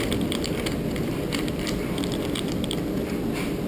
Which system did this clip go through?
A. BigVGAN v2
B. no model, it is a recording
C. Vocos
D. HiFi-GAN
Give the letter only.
A